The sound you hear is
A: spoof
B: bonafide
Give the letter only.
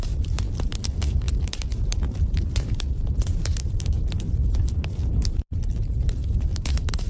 A